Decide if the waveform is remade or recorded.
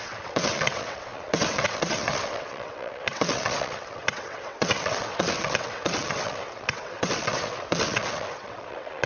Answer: remade